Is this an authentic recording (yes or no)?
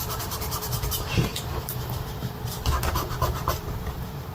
no